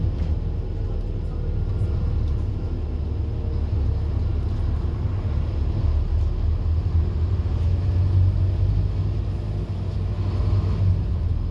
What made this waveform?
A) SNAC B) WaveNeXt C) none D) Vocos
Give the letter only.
C